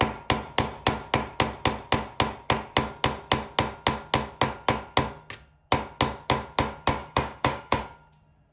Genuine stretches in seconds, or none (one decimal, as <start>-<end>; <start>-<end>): 0.0-7.0; 7.8-8.5

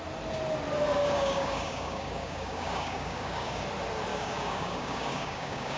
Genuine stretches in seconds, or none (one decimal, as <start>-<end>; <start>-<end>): 0.0-1.0; 3.6-4.1

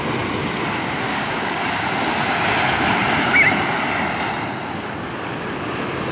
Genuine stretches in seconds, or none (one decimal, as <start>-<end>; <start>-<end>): 0.0-1.1; 1.6-6.1

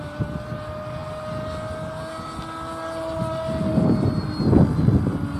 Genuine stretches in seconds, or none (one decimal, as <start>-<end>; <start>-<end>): 0.0-5.4

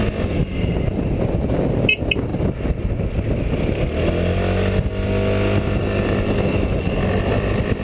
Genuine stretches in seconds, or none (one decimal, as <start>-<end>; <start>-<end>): 0.0-7.8

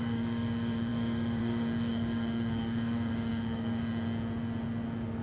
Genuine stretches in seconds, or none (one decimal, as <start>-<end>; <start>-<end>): 3.9-5.2